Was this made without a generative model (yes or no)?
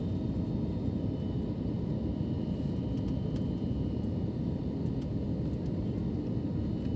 yes